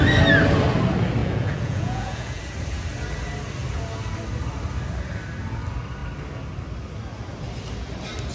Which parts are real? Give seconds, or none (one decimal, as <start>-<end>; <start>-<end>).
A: 0.0-1.2; 2.4-8.3